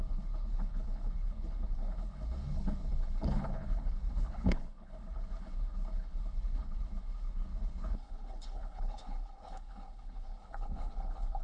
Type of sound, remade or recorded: remade